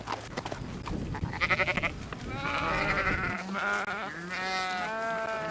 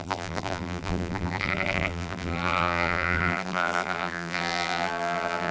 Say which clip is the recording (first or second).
first